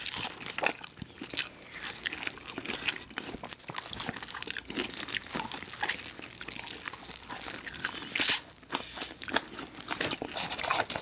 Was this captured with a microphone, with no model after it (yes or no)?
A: yes